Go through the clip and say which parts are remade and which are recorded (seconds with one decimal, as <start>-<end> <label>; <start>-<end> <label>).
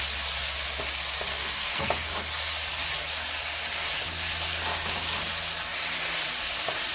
0.0-1.3 recorded; 1.3-1.9 remade; 1.9-6.9 recorded